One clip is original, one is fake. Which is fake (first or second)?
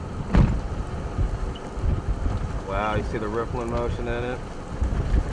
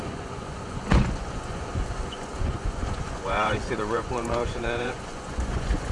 second